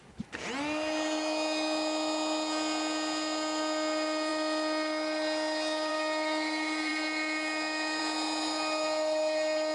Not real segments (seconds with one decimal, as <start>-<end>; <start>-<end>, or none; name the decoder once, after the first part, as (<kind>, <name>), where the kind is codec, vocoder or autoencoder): none